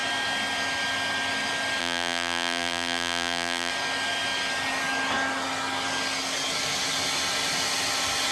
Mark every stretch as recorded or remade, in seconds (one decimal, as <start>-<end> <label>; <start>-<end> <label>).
0.0-1.8 recorded; 1.8-3.7 remade; 3.7-8.3 recorded